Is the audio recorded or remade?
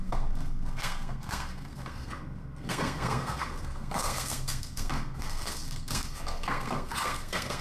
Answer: remade